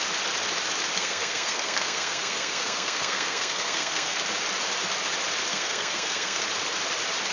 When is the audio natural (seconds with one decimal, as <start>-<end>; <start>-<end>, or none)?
0.0-1.0; 4.2-5.5; 6.4-7.3